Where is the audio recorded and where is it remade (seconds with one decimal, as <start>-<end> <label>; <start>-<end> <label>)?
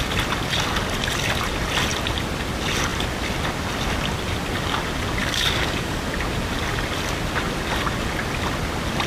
0.0-5.2 recorded; 5.2-6.0 remade; 6.0-9.1 recorded